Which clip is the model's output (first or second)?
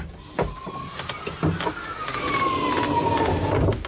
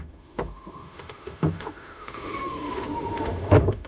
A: second